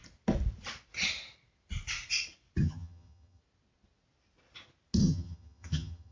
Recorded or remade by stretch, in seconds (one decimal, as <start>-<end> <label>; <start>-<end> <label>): 0.0-2.6 recorded; 2.6-3.4 remade; 3.4-5.0 recorded; 5.0-6.1 remade